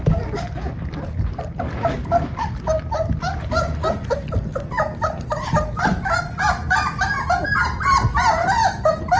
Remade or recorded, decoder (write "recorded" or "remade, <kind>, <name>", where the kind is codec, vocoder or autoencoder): recorded